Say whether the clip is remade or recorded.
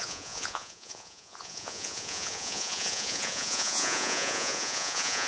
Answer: remade